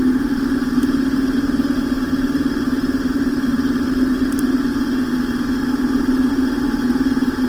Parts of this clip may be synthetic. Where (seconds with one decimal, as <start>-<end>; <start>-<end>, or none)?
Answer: 0.0-4.7; 6.3-7.5

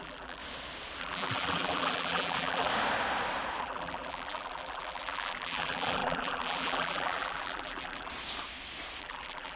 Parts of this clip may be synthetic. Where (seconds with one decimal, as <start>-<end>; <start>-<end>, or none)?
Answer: 0.0-0.4; 1.0-2.7; 3.6-8.1; 9.0-9.6

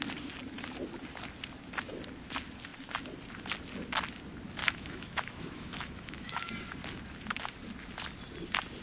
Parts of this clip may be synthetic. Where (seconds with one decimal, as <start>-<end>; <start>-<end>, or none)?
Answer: 4.6-6.5

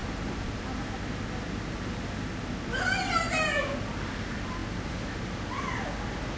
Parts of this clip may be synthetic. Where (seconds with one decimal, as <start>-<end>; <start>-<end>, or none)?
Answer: 3.8-6.4

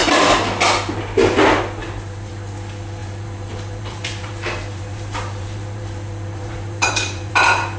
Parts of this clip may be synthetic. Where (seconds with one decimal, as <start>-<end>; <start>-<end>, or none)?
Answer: 1.8-2.3; 3.0-7.3